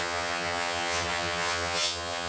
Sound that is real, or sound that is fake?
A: fake